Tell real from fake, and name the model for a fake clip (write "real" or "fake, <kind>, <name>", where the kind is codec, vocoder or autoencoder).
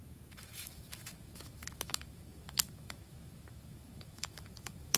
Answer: fake, autoencoder, DAC-VAE